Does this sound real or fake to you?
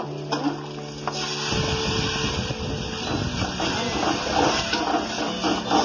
real